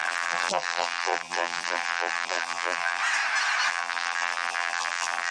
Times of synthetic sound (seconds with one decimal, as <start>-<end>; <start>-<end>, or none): 0.0-3.0; 3.7-5.3